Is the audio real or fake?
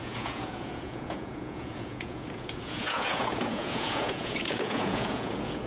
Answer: fake